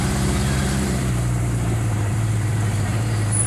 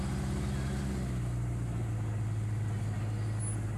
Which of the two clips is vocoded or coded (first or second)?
first